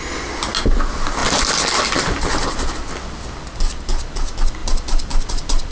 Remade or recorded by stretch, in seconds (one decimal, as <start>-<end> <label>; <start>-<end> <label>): 0.0-1.2 recorded; 1.2-2.0 remade; 2.0-4.6 recorded; 4.6-5.7 remade